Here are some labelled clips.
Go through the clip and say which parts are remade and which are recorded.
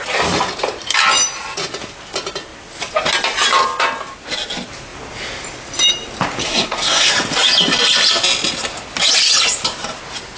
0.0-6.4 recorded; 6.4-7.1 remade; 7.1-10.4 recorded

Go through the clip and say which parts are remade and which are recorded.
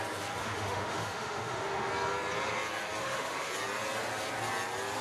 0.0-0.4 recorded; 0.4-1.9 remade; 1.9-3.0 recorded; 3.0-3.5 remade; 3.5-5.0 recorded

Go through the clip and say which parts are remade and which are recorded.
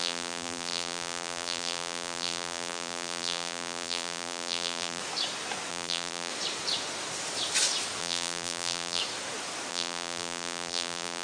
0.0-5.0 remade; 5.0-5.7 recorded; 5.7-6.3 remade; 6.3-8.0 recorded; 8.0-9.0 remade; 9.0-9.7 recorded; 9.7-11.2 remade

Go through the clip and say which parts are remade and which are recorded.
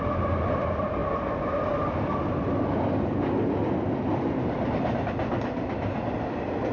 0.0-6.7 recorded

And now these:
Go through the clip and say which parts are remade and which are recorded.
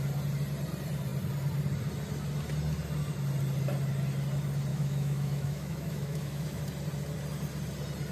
0.0-4.7 recorded; 4.7-6.6 remade; 6.6-8.1 recorded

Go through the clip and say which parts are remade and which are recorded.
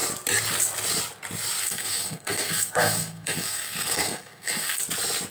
0.0-1.6 recorded; 1.6-4.8 remade; 4.8-5.3 recorded